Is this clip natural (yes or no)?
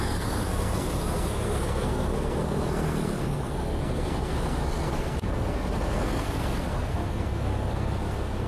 no